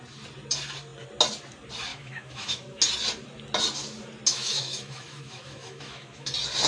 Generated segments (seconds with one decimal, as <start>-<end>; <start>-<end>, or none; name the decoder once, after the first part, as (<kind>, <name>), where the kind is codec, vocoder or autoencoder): 1.9-2.8 (autoencoder, DAC-VAE); 4.3-6.3